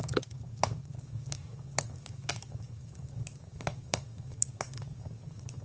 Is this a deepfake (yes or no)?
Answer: yes